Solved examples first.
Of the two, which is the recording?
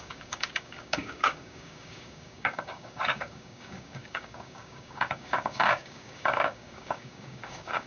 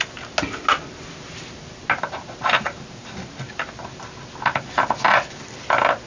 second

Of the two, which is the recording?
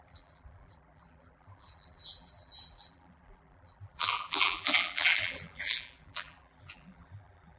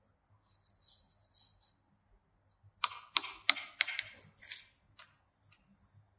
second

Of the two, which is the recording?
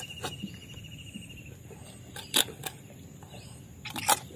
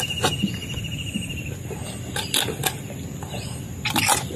second